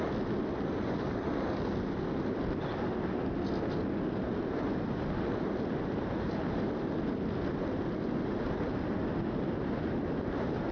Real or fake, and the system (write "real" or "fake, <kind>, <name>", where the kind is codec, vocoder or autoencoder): real